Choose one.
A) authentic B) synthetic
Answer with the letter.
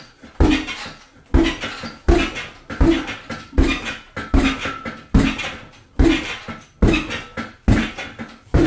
A